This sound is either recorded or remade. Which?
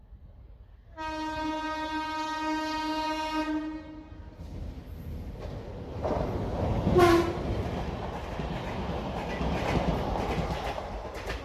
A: recorded